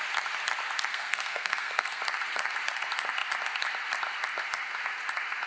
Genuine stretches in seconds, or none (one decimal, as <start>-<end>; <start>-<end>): 0.0-0.9; 2.0-5.5